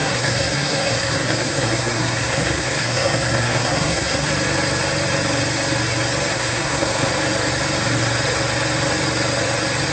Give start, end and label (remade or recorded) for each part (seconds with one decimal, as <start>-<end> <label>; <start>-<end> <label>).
0.0-4.3 remade; 4.3-6.3 recorded; 6.3-7.1 remade; 7.1-9.9 recorded